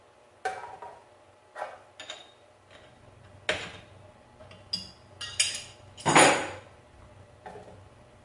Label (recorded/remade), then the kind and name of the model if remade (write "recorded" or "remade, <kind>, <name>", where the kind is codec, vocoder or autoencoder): recorded